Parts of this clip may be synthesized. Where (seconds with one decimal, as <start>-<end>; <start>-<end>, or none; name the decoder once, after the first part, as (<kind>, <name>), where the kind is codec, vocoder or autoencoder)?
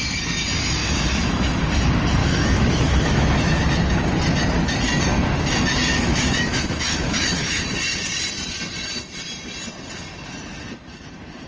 0.8-1.6 (autoencoder, DAC-VAE); 2.2-3.7; 5.9-7.6